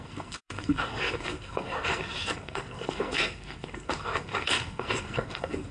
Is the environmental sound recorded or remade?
remade